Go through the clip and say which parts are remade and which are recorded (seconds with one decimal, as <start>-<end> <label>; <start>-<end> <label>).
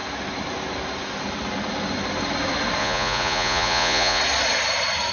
0.0-2.8 recorded; 2.8-4.2 remade; 4.2-5.1 recorded